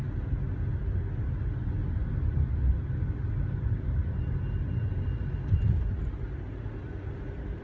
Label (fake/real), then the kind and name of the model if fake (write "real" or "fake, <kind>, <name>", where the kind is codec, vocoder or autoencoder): real